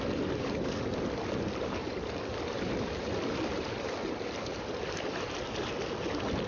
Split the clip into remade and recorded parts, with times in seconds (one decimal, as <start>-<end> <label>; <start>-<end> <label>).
0.0-1.8 recorded; 1.8-5.7 remade; 5.7-6.5 recorded